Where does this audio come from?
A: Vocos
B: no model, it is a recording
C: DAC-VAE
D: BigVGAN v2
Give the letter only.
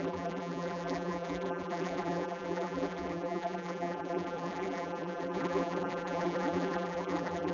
D